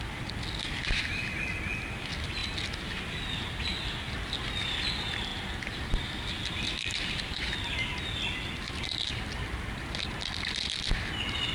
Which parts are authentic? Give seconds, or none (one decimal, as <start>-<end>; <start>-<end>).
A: 0.0-11.5